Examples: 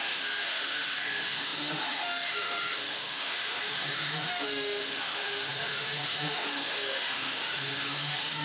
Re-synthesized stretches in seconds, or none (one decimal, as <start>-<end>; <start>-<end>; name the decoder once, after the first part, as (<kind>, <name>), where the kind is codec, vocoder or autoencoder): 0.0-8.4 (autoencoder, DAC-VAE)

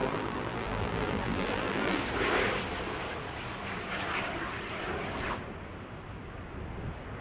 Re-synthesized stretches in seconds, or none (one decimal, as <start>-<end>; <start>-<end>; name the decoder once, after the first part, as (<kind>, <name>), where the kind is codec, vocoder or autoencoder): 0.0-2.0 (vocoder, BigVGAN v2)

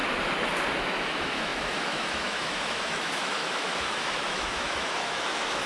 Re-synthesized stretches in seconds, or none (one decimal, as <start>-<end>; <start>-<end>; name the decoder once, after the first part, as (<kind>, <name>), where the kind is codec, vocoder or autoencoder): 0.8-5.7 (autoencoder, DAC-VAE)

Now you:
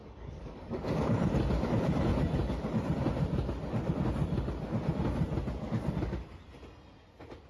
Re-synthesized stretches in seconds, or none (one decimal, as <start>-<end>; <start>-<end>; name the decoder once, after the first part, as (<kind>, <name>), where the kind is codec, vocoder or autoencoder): 0.0-1.3 (codec, DAC)

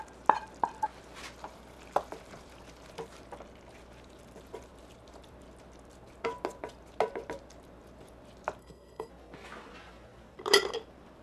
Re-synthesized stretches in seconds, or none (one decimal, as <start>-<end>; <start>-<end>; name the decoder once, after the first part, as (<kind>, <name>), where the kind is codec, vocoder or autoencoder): 8.6-9.1 (codec, SNAC)

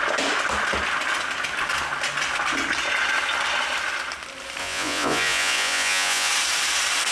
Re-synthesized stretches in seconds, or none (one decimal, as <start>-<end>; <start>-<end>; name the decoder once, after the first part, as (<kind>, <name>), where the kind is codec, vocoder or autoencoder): 4.6-6.3 (vocoder, Vocos)

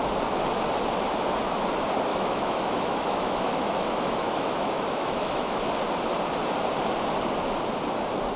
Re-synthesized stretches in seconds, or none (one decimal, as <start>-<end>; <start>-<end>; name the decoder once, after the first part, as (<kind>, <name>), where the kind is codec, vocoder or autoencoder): 2.1-5.6 (autoencoder, DAC-VAE)

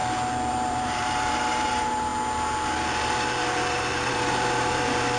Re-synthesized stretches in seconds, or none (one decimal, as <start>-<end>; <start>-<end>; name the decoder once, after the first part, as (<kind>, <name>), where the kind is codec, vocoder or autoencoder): 0.5-2.1 (vocoder, BigVGAN v2); 3.7-5.2